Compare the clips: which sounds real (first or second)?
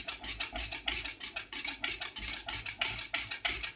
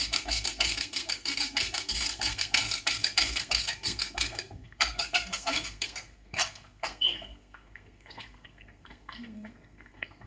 first